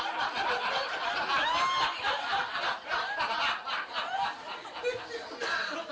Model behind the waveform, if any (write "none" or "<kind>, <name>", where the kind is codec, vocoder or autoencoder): none